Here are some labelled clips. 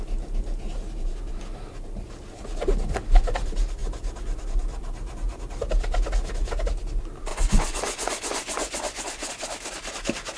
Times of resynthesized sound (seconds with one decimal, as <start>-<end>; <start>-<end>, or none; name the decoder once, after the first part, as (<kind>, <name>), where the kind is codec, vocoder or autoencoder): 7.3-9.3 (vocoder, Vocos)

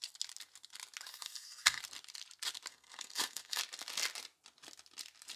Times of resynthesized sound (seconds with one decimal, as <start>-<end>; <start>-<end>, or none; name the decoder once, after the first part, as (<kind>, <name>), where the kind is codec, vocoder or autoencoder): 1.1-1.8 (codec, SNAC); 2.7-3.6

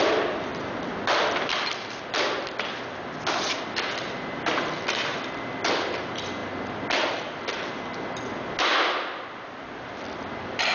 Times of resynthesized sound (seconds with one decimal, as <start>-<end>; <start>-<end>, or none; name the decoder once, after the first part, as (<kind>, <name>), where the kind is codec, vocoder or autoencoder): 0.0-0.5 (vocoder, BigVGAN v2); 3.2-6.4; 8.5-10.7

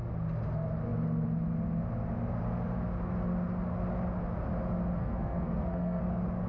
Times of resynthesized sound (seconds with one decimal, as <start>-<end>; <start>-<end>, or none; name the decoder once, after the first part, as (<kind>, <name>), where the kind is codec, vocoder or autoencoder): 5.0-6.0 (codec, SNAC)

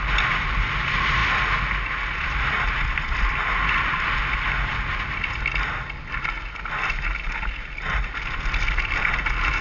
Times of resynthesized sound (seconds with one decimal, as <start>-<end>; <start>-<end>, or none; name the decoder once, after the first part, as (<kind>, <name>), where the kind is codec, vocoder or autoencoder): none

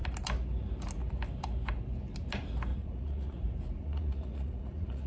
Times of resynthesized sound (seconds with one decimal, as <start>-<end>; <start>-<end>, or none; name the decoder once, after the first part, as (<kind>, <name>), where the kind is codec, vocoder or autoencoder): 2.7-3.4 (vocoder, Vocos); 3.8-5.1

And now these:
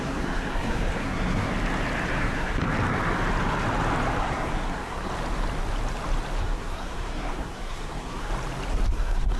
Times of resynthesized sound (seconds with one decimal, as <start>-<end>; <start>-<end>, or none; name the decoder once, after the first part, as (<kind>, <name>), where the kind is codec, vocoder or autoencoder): 0.0-1.5 (codec, SNAC); 2.2-2.6; 4.2-5.1; 6.4-8.3; 8.9-9.4

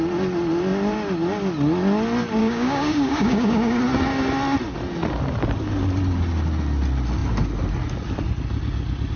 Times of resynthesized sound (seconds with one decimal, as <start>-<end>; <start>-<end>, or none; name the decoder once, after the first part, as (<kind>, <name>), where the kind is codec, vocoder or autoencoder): 2.4-3.8 (codec, DAC)